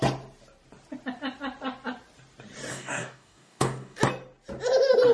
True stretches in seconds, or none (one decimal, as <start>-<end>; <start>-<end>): 0.0-2.7; 4.0-5.1